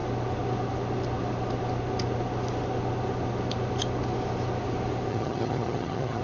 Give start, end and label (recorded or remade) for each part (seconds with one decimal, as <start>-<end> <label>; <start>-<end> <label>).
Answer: 0.0-5.1 recorded; 5.1-6.2 remade